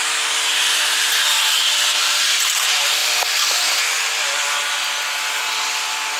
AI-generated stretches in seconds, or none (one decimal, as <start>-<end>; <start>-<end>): none